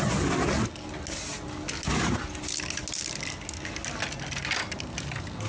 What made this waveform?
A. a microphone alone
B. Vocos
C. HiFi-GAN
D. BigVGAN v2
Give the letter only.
A